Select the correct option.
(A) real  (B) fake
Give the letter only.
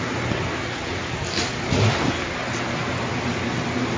A